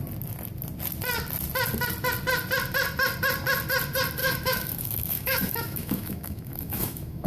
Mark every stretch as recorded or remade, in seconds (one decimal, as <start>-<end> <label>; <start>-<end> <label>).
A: 0.0-4.2 recorded; 4.2-7.3 remade